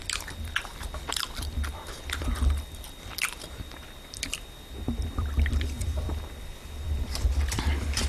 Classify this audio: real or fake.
fake